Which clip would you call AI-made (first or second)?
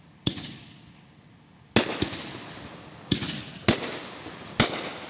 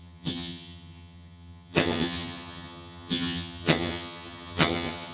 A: second